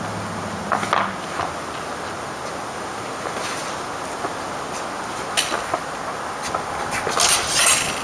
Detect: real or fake real